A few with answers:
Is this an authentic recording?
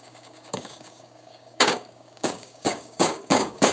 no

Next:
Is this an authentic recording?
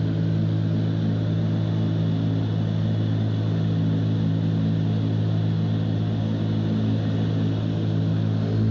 yes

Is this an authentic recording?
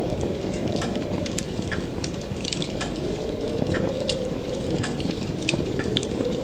no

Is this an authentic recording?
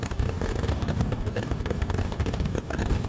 no